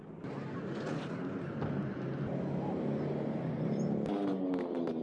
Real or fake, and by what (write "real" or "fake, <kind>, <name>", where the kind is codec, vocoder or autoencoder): real